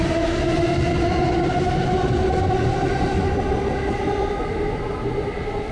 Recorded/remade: recorded